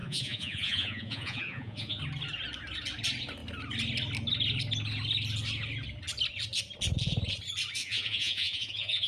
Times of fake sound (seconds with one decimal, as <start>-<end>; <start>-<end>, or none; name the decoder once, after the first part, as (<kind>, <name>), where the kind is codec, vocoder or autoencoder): 0.0-2.0 (vocoder, Vocos); 7.8-9.1